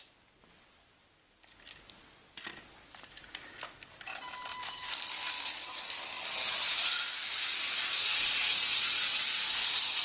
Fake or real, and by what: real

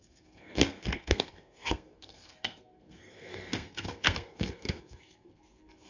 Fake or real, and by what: fake, codec, SNAC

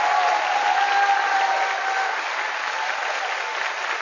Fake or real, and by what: real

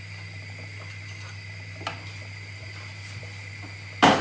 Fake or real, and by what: real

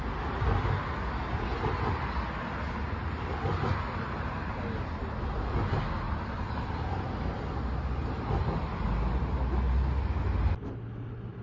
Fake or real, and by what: real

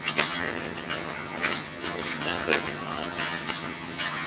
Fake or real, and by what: fake, vocoder, HiFi-GAN